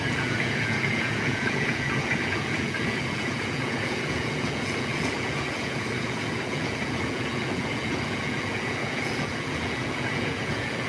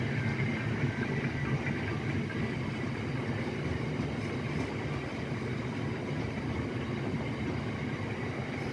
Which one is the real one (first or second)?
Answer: second